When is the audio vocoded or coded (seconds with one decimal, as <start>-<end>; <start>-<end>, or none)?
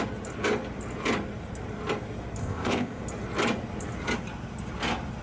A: 2.4-3.0